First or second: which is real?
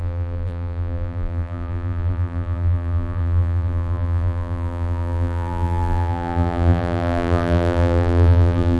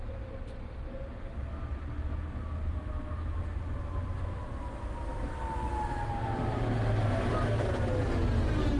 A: second